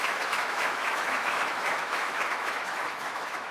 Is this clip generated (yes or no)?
yes